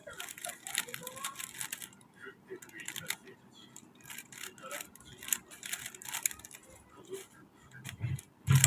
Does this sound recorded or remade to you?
recorded